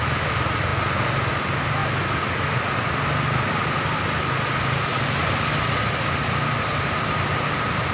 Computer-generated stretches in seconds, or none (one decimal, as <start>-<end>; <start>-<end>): none